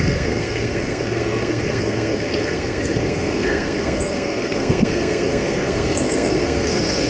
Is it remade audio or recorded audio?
remade